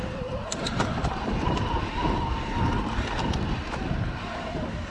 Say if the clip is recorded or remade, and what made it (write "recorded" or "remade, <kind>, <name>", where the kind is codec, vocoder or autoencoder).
remade, vocoder, BigVGAN v2